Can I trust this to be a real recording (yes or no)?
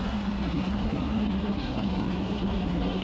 no